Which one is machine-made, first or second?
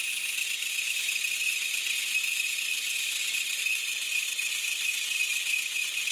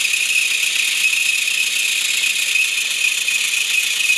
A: first